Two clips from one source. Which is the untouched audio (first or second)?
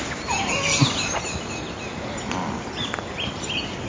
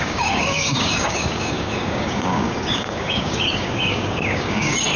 first